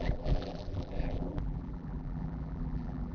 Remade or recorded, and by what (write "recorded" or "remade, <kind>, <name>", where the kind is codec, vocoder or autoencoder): remade, vocoder, BigVGAN v2